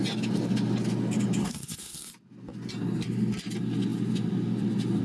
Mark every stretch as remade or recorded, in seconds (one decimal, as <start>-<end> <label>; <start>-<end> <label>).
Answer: 0.0-1.4 recorded; 1.4-2.1 remade; 2.1-5.0 recorded